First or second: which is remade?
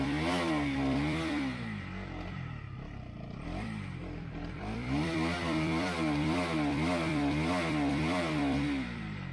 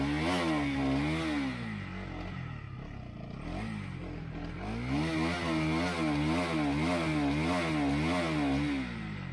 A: first